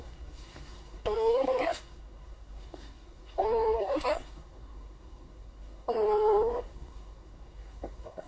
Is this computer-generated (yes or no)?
yes